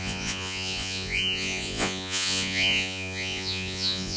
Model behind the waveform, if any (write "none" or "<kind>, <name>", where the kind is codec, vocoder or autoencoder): vocoder, Vocos